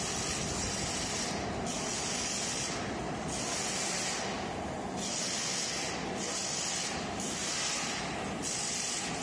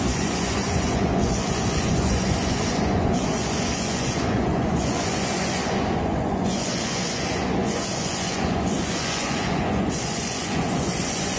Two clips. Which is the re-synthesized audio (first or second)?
second